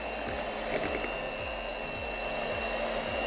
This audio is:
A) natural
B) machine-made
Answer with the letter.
A